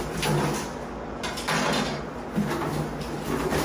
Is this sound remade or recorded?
recorded